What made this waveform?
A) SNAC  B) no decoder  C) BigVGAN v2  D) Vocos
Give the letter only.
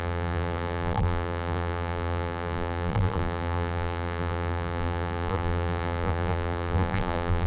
C